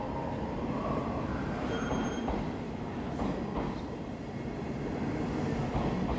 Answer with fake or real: real